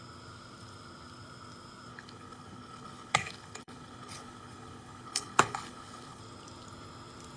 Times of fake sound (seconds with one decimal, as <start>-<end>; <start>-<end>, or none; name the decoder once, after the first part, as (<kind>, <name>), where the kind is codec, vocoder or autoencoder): 1.9-6.2 (codec, HILCodec)